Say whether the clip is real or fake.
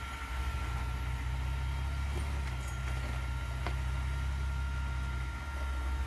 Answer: real